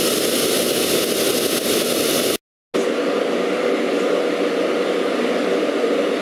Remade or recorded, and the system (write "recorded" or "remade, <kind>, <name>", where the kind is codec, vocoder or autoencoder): recorded